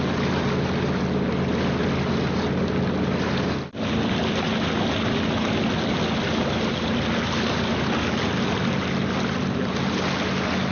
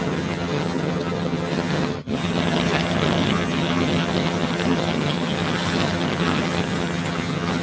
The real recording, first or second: first